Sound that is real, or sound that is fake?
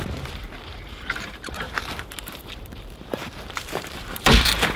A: fake